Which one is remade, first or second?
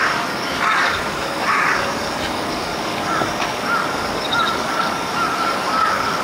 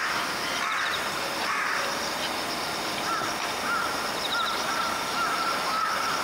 first